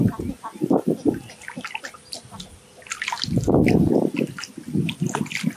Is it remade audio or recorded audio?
recorded